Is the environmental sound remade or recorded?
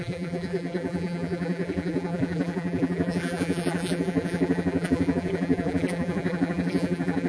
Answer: remade